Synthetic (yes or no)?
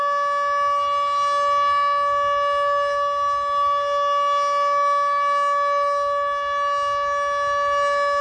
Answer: no